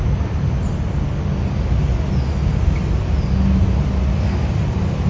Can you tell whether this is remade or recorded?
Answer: recorded